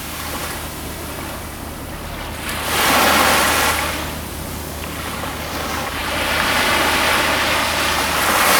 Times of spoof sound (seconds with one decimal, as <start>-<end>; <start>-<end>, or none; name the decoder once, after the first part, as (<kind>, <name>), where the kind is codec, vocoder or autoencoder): 0.0-0.4 (codec, DAC); 4.5-6.0